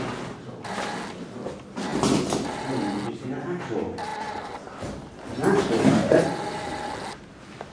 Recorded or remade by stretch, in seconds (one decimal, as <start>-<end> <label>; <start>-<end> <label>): 0.0-7.7 recorded